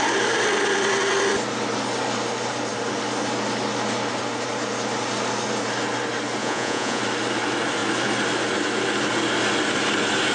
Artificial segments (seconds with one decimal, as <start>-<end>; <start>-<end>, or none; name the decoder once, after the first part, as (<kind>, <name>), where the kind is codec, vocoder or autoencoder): 6.4-7.0 (vocoder, Vocos)